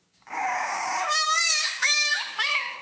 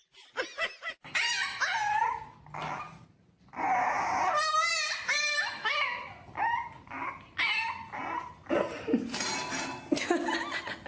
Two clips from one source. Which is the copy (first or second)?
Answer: first